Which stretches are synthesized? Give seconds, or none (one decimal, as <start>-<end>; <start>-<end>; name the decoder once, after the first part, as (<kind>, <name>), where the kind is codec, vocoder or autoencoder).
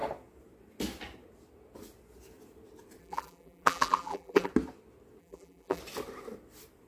3.0-4.5 (vocoder, BigVGAN v2); 5.2-5.8